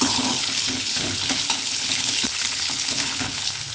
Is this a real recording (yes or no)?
no